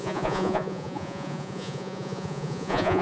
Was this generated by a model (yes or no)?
yes